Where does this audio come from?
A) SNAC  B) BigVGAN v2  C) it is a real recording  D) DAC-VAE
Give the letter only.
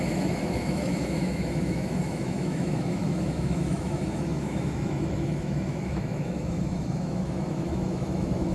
D